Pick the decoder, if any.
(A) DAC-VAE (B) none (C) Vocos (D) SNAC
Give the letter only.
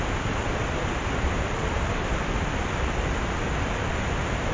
B